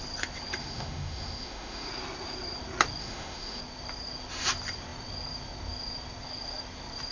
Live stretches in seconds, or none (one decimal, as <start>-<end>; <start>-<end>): 0.0-0.6; 1.9-3.0; 3.6-7.1